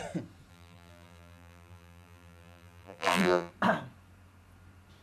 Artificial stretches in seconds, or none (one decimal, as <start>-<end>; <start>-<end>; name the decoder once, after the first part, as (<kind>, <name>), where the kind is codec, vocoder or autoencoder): 0.5-3.5 (vocoder, BigVGAN v2)

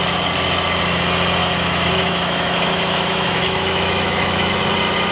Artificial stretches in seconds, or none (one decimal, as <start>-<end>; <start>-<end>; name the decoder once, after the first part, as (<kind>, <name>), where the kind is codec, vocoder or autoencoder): 1.4-4.5 (autoencoder, DAC-VAE)

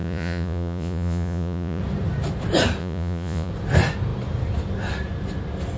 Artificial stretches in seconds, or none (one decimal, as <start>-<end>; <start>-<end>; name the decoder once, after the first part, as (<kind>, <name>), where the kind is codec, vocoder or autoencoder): 0.0-1.8 (vocoder, Vocos); 2.8-3.5

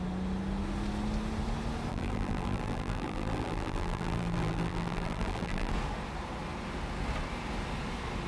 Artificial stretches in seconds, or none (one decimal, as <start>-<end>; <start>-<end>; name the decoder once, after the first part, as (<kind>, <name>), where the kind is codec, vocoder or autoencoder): 1.9-5.7 (vocoder, BigVGAN v2)

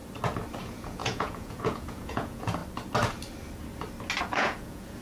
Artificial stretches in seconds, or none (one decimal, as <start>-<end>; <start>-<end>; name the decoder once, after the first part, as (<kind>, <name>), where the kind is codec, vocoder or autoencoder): 0.6-2.6 (vocoder, Vocos); 4.2-5.0

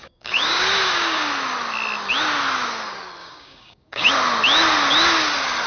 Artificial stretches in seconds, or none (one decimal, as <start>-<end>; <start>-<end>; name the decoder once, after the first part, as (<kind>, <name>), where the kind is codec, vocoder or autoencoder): 0.0-1.3 (codec, DAC); 3.2-4.1